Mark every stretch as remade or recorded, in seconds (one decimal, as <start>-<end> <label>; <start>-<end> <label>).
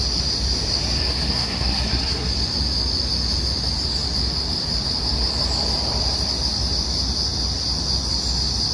0.0-1.1 recorded; 1.1-2.3 remade; 2.3-8.7 recorded